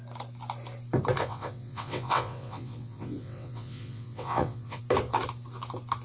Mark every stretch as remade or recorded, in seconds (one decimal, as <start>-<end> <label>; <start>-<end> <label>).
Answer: 0.0-1.2 recorded; 1.2-4.8 remade; 4.8-6.0 recorded